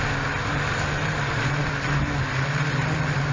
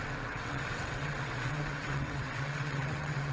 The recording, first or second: first